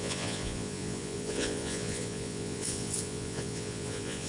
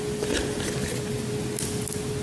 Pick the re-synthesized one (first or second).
first